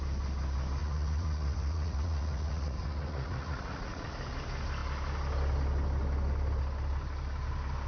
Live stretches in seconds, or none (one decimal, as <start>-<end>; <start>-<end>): 0.0-0.8; 4.1-7.9